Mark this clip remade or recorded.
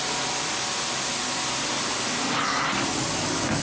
recorded